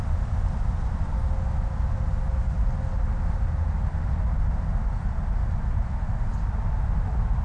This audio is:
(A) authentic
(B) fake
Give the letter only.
A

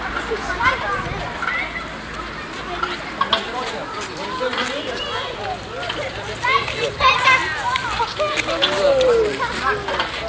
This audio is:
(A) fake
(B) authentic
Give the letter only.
B